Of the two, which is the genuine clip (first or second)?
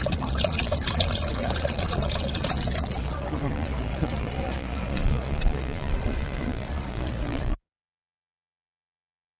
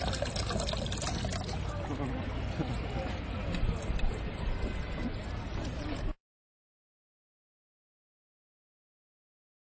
second